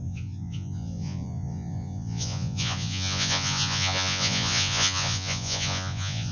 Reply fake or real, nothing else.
fake